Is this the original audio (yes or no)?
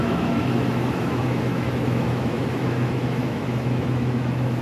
no